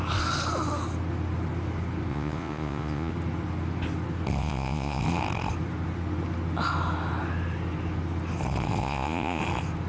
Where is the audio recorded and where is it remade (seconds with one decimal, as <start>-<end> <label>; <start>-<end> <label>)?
0.0-2.1 recorded; 2.1-3.1 remade; 3.1-4.4 recorded; 4.4-5.0 remade; 5.0-8.8 recorded; 8.8-9.4 remade; 9.4-9.9 recorded